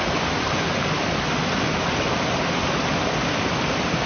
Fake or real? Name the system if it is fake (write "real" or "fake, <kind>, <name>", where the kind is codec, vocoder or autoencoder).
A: real